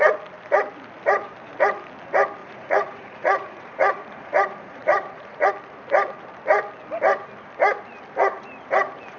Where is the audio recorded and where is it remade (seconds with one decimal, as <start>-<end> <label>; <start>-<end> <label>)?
0.0-2.4 recorded; 2.4-5.5 remade; 5.5-9.2 recorded